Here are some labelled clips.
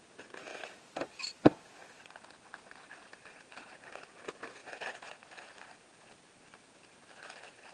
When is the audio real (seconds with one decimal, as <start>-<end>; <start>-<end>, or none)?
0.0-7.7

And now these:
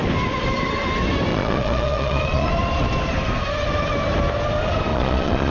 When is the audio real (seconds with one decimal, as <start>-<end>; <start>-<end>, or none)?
0.0-1.3; 2.5-4.9

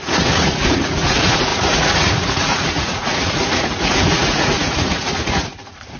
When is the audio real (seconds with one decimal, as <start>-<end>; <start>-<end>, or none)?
none

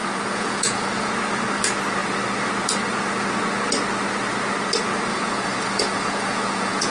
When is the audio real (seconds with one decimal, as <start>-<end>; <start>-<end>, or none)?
1.1-5.1

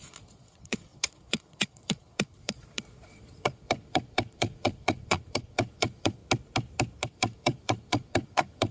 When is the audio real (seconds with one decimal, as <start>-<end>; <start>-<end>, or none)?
6.2-7.1

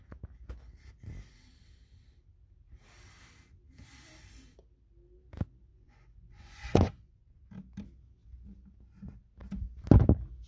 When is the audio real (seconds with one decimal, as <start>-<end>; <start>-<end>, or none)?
0.0-5.7; 7.5-10.5